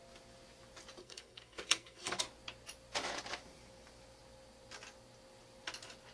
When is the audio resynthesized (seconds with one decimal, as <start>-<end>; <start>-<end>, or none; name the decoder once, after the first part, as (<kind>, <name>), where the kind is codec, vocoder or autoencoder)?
1.0-2.2 (codec, SNAC)